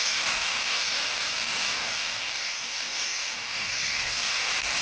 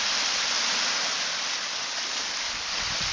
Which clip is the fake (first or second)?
first